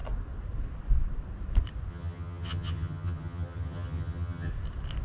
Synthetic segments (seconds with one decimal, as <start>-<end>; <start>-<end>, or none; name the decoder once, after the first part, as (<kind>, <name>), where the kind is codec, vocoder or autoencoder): 1.9-4.5 (vocoder, HiFi-GAN)